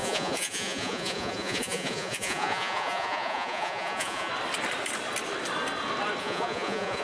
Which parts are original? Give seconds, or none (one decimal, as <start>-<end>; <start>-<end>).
4.3-6.2